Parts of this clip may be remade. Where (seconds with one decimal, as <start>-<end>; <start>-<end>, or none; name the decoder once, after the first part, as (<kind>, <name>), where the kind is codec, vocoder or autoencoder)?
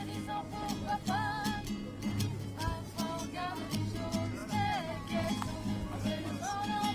none